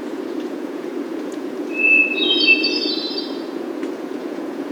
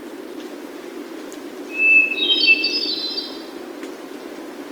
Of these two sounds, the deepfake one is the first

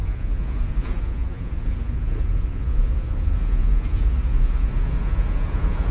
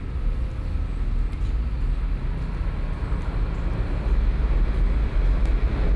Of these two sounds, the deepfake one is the first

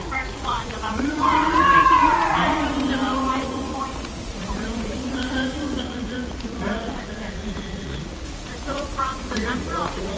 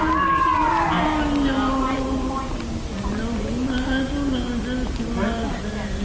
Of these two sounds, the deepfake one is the first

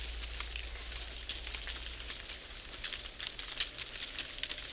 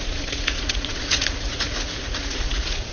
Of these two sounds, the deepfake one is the second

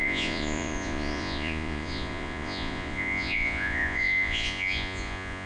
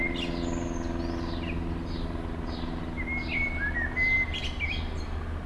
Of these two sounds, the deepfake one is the first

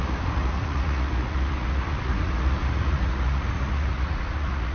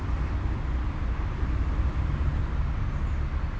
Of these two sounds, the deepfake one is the first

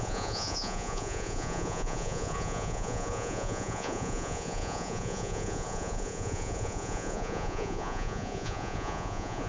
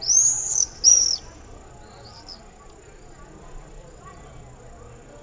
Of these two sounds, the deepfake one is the first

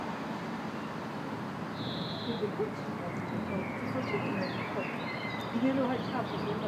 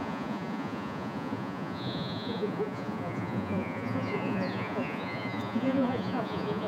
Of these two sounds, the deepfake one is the second